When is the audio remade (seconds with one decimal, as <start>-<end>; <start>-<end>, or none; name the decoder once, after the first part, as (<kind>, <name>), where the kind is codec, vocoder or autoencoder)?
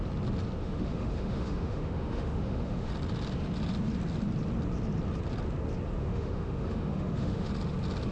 0.6-2.9 (autoencoder, DAC-VAE); 6.0-7.5